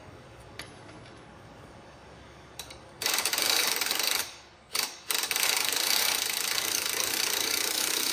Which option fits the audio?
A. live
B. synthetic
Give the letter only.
B